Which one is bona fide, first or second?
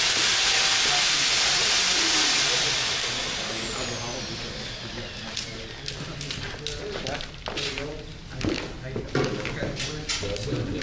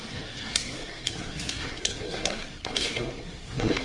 first